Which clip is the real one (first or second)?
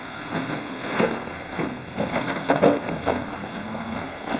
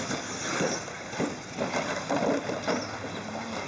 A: second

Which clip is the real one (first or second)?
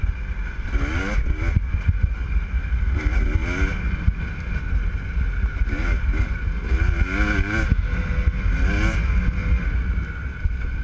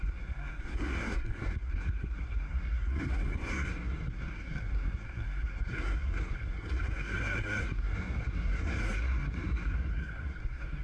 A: first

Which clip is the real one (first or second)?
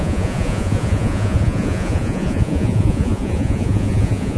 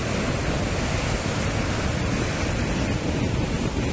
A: second